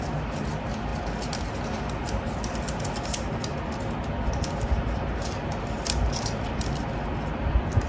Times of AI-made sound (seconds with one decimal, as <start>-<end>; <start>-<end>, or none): none